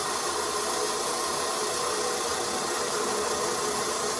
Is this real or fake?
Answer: real